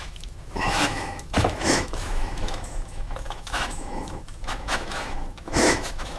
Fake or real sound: fake